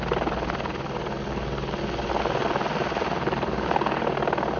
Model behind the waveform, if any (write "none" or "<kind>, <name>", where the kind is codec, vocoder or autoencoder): none